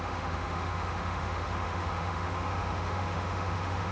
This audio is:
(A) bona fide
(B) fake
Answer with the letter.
B